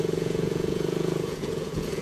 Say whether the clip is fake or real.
fake